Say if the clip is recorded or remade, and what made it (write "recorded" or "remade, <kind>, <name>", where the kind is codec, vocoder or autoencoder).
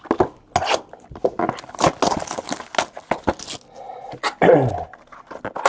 recorded